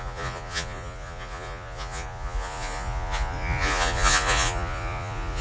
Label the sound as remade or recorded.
remade